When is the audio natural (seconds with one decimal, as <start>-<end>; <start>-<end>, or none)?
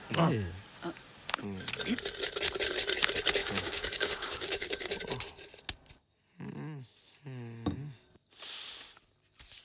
0.0-3.4; 5.0-9.6